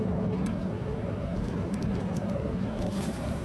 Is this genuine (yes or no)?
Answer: no